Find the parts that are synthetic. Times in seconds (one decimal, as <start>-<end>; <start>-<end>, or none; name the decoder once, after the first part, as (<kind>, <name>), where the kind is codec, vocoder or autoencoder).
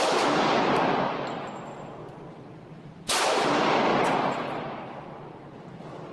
none